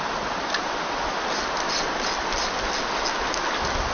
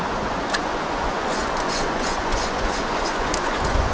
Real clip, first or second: first